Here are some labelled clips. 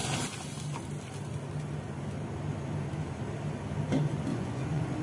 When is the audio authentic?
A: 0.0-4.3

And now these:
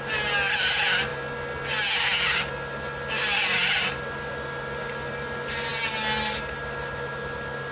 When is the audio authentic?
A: 0.0-7.7

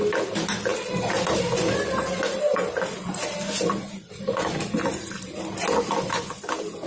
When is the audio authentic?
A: 0.0-6.9